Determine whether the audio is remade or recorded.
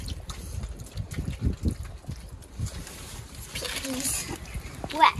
recorded